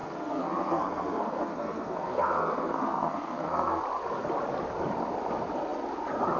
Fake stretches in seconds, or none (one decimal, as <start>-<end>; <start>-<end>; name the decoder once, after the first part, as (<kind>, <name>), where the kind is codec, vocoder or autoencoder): 0.0-3.8 (codec, SNAC)

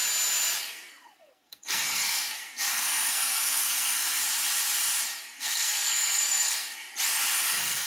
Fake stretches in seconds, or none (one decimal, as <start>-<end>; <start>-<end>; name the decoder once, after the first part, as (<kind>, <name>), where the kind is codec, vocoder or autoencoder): 0.6-4.2 (codec, SNAC); 5.2-6.8; 7.4-7.9

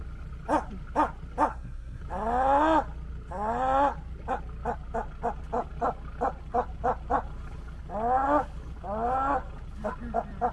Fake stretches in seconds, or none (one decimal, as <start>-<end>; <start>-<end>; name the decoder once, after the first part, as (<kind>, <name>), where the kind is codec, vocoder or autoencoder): 1.5-2.0 (codec, SNAC)